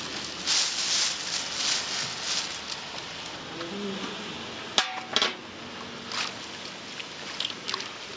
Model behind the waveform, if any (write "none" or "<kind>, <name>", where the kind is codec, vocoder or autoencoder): none